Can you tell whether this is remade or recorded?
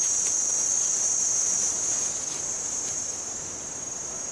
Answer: recorded